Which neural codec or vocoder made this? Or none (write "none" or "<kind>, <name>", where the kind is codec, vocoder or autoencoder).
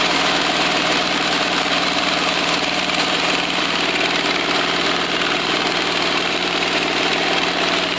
vocoder, BigVGAN v2